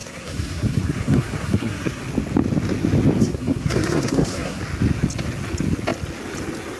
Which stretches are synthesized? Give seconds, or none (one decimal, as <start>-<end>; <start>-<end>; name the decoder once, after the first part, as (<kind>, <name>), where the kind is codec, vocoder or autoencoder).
0.0-2.0 (codec, SNAC); 3.2-4.6